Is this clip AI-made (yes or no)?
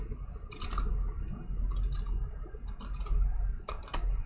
no